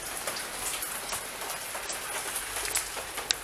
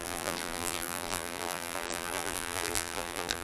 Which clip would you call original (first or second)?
first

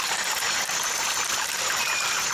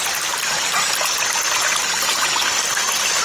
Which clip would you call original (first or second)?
second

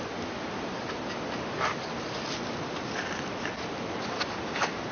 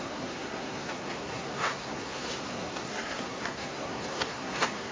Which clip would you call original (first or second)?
first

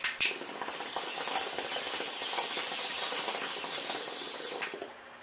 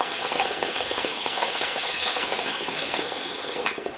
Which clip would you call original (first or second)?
first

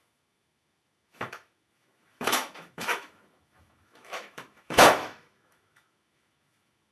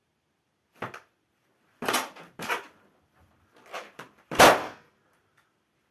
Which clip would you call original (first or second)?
second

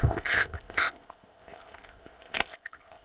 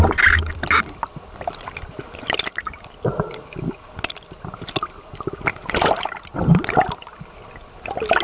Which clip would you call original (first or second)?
second